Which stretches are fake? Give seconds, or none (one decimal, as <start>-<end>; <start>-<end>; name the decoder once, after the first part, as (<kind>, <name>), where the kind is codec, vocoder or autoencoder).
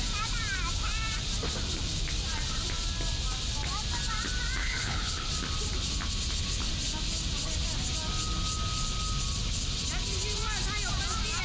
4.6-5.3 (codec, HILCodec)